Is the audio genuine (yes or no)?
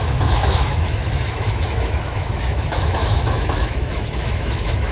no